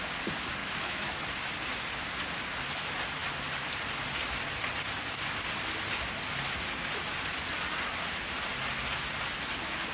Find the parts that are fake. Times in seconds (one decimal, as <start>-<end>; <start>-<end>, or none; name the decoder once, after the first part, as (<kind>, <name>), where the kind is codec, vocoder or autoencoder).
0.6-1.2 (autoencoder, DAC-VAE)